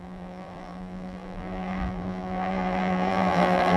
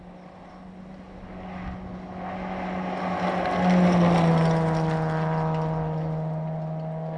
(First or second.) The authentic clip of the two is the second